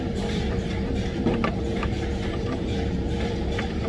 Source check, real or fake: fake